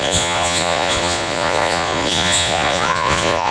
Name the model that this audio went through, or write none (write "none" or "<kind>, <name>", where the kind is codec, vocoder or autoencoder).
vocoder, Vocos